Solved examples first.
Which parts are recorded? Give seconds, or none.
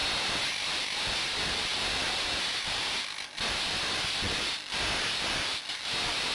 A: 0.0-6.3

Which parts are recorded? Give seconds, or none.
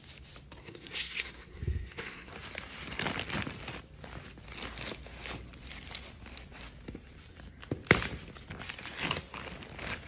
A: 0.0-0.6; 2.3-10.1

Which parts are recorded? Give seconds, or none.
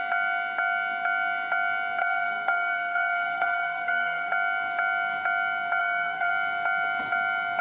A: 0.0-2.0; 4.3-5.8; 6.3-7.6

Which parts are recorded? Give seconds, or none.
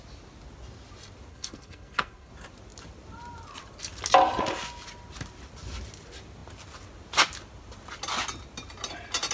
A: 0.0-1.3; 2.3-9.3